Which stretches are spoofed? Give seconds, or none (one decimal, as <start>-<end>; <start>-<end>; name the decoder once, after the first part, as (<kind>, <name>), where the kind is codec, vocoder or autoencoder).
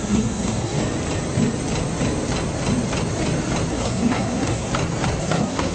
0.0-0.8 (codec, SNAC); 3.7-4.7; 5.2-5.7